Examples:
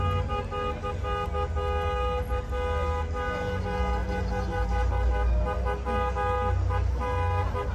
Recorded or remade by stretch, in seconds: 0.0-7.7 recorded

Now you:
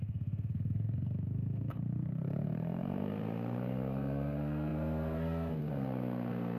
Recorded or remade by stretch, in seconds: 0.0-6.6 remade

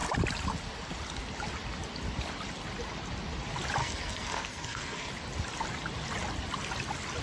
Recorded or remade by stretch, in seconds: 0.0-3.8 recorded; 3.8-5.1 remade; 5.1-7.2 recorded

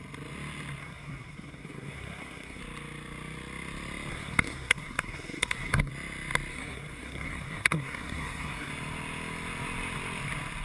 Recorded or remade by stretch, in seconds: 0.0-0.8 recorded; 0.8-2.6 remade; 2.6-4.1 recorded; 4.1-5.9 remade; 5.9-6.5 recorded; 6.5-8.7 remade; 8.7-10.6 recorded

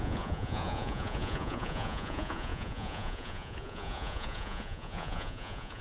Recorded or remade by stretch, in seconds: 0.0-5.8 remade